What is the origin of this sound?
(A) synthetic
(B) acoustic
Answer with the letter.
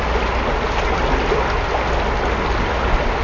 B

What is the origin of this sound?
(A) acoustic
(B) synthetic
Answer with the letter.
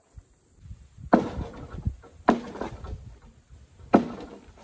A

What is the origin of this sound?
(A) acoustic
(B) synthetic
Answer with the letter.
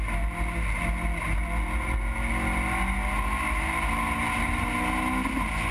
A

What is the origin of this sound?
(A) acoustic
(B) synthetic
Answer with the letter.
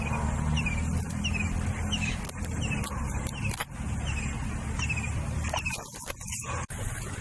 A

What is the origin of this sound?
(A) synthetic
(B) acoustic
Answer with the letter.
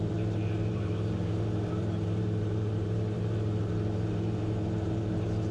A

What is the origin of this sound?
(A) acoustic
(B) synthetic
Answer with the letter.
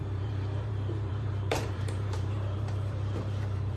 B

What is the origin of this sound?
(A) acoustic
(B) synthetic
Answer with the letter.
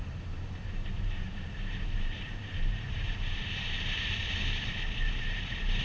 B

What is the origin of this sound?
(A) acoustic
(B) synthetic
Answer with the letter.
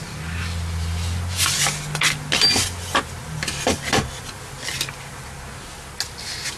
A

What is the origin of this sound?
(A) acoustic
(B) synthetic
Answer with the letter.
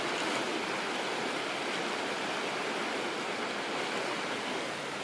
A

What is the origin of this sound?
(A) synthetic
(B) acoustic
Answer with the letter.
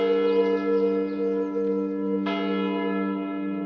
B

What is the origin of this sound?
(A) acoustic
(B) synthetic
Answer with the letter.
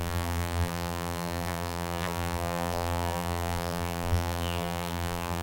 B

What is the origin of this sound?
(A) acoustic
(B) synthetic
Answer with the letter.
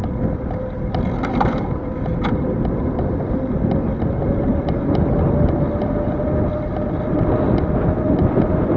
A